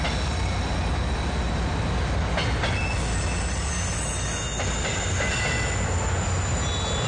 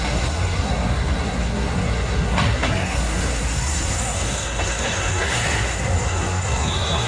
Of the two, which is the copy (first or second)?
second